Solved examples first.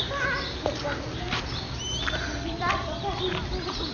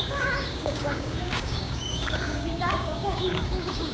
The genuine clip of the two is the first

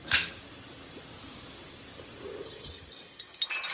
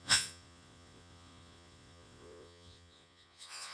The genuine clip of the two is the first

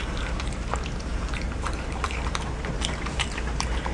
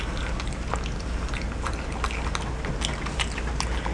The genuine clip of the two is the second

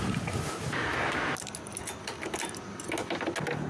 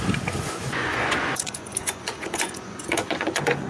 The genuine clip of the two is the first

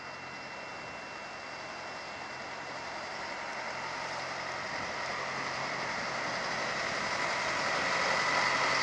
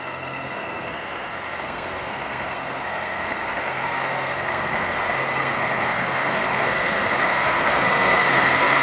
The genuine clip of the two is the first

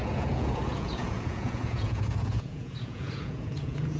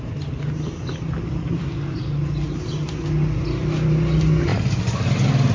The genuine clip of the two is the second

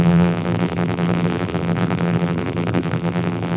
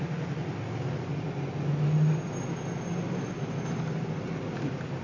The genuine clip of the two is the second